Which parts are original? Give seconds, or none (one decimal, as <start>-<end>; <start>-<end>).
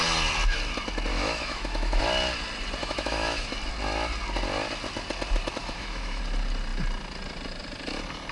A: 0.0-1.1; 2.0-2.8; 3.5-5.6; 6.2-8.3